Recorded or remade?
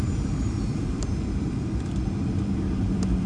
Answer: remade